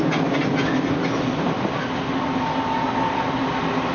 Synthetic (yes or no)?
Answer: no